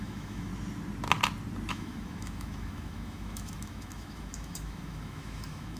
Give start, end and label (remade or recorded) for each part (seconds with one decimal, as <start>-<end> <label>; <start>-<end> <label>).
0.0-0.5 remade; 0.5-1.7 recorded; 1.7-5.8 remade